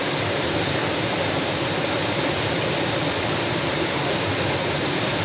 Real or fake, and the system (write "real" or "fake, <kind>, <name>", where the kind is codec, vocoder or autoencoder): real